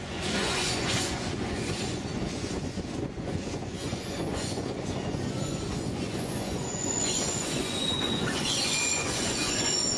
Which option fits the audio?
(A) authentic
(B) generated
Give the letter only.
B